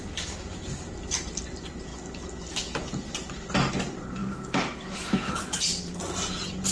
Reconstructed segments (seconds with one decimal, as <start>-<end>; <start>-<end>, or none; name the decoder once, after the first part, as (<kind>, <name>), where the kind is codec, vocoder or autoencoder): 4.2-5.6 (autoencoder, DAC-VAE)